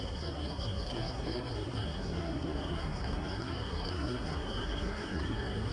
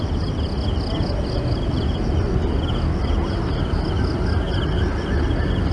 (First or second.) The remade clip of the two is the first